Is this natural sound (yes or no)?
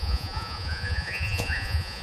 no